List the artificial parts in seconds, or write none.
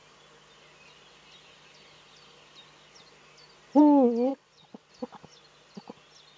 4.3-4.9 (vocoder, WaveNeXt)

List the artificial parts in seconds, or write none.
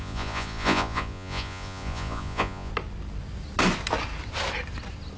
0.0-2.7 (vocoder, Vocos)